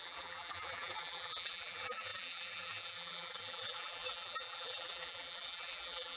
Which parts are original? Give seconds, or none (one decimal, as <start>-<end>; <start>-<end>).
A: none